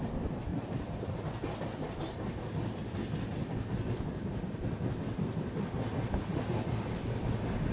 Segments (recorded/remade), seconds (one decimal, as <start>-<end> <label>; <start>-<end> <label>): 0.0-0.5 recorded; 0.5-1.2 remade; 1.2-7.7 recorded